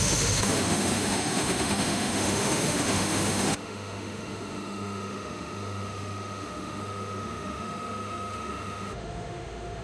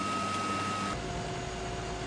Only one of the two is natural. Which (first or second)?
second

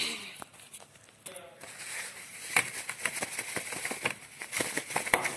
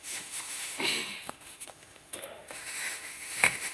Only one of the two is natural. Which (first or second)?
first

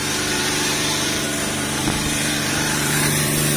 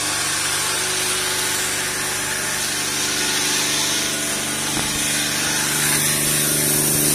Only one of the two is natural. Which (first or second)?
second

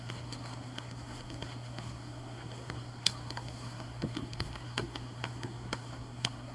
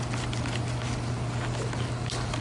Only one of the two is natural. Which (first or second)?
second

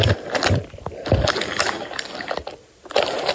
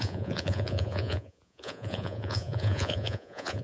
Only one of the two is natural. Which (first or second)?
first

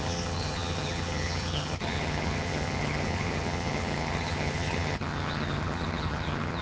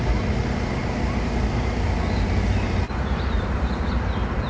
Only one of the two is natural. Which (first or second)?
second